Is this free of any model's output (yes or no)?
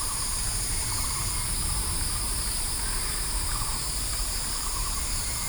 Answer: no